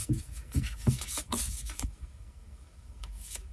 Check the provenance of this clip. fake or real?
fake